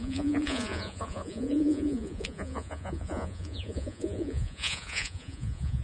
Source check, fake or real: fake